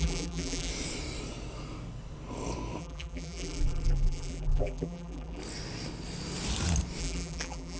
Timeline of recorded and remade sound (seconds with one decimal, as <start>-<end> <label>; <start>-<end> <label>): 0.0-0.7 remade; 0.7-2.8 recorded; 2.8-5.4 remade; 5.4-7.0 recorded; 7.0-7.8 remade